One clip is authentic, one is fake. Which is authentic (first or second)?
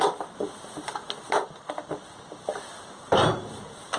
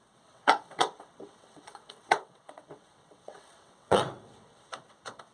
first